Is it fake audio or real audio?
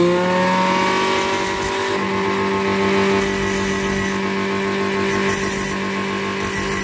real